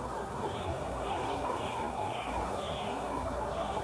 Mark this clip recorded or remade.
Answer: remade